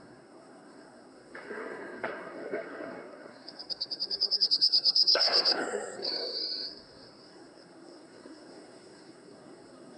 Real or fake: fake